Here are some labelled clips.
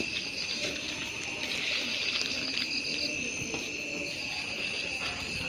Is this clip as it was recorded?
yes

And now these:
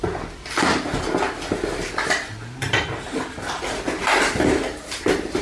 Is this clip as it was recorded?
yes